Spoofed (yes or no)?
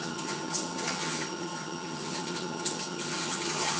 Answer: yes